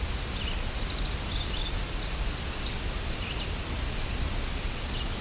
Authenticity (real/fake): real